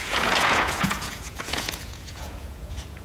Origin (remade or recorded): remade